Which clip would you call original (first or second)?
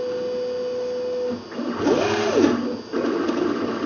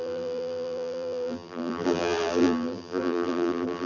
first